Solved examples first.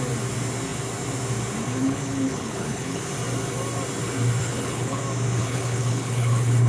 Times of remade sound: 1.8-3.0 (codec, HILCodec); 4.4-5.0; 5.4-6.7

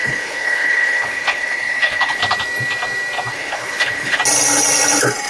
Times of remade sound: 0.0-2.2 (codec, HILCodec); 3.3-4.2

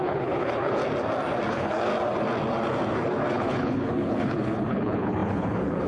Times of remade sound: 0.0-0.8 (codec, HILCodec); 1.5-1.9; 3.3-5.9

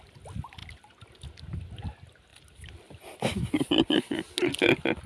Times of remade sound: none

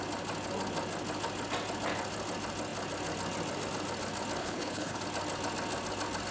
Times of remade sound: 4.4-5.0 (codec, HILCodec)

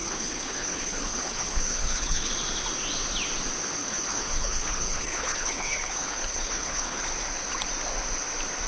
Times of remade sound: 0.0-2.3 (codec, HILCodec); 3.8-7.0

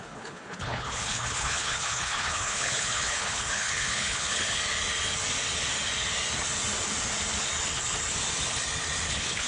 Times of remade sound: 0.0-4.6 (codec, HILCodec); 9.1-9.5